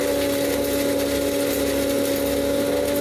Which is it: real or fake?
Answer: real